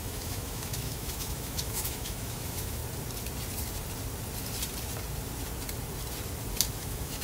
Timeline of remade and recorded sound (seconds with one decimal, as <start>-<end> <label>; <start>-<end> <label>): 0.0-2.8 remade; 2.8-6.7 recorded; 6.7-7.2 remade

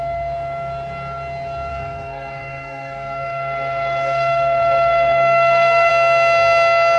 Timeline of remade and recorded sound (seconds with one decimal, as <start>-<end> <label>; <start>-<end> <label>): 0.0-1.7 recorded; 1.7-5.9 remade; 5.9-7.0 recorded

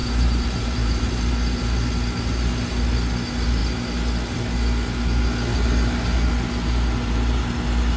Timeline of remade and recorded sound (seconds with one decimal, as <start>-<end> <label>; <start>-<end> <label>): 0.0-1.1 remade; 1.1-8.0 recorded

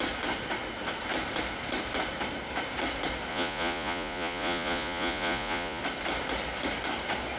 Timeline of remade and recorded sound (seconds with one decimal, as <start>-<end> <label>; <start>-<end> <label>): 0.0-3.3 recorded; 3.3-5.8 remade; 5.8-7.4 recorded